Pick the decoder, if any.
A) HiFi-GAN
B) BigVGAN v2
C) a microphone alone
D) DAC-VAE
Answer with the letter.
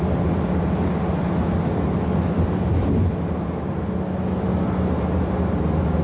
C